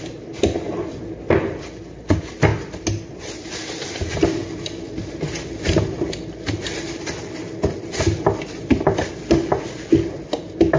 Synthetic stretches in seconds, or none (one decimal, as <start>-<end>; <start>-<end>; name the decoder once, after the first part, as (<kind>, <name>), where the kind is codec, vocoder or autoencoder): none